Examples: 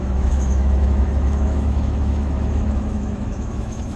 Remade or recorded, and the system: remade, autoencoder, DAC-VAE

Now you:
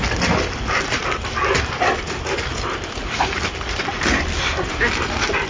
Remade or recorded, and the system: recorded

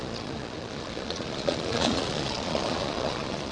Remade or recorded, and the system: remade, vocoder, Vocos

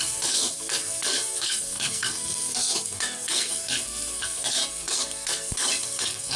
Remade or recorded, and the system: remade, codec, SNAC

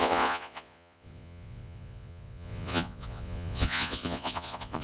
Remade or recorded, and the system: remade, vocoder, Vocos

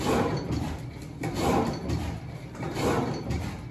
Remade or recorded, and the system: recorded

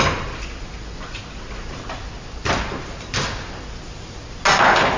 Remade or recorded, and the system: recorded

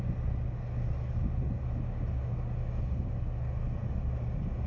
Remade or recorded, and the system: recorded